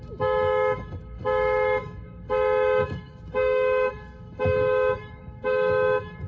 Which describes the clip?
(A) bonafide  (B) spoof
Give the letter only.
B